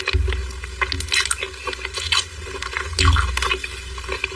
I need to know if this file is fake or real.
real